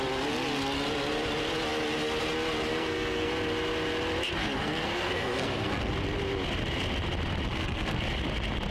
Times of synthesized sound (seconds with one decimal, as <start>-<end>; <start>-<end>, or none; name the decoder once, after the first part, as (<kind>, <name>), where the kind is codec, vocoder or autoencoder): 2.7-3.3 (codec, SNAC); 4.4-5.9; 7.5-8.0